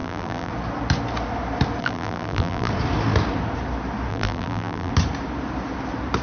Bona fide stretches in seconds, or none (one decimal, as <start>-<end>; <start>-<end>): 0.5-1.8; 2.7-4.1; 4.9-6.2